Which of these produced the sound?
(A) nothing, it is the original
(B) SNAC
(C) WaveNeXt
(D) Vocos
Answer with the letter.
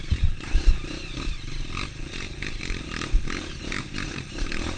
A